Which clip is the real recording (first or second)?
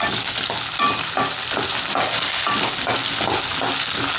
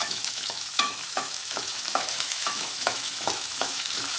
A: first